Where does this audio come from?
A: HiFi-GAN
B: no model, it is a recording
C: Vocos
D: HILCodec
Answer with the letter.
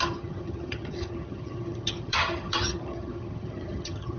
A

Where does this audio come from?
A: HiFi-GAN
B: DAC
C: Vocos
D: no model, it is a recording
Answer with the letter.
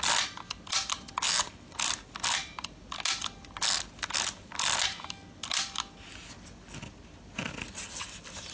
D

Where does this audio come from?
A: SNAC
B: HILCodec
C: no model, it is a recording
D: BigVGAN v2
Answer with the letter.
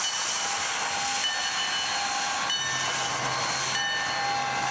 C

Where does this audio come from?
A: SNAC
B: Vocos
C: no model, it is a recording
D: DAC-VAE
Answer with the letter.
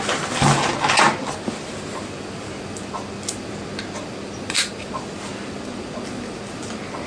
C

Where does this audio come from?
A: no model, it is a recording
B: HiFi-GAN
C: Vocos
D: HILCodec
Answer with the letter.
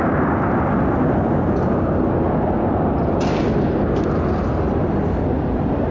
A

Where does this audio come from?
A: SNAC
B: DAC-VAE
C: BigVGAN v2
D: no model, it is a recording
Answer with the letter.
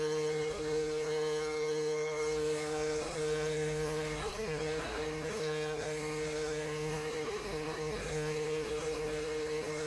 A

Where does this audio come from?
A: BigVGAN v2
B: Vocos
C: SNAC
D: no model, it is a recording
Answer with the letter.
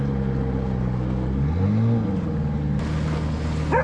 D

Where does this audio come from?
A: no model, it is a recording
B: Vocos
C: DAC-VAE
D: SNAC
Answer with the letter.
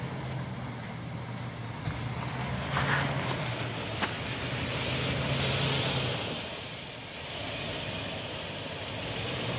A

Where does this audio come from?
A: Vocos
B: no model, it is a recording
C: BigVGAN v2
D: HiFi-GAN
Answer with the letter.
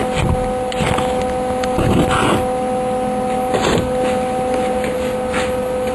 B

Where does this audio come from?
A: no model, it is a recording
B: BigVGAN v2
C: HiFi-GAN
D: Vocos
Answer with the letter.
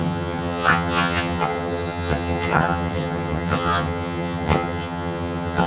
C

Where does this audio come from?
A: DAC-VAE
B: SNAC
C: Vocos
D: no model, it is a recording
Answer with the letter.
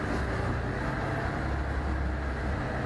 D